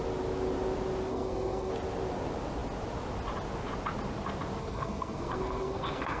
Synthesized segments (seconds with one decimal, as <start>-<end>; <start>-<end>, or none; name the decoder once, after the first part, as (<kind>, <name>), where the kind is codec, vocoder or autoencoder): 1.1-1.7 (codec, SNAC); 4.6-6.2